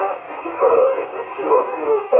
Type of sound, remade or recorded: remade